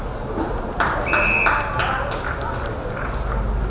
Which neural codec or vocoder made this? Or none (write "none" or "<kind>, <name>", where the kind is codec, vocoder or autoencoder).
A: none